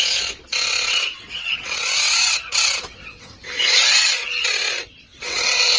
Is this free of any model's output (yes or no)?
no